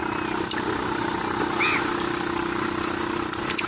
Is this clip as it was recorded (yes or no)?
yes